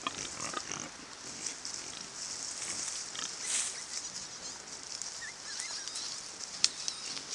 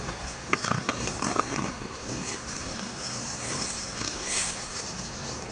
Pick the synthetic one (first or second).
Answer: second